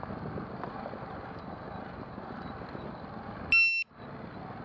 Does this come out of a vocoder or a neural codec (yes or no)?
no